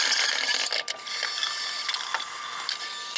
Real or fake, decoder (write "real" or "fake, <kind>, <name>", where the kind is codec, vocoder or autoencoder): real